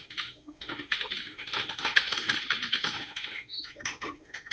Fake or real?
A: fake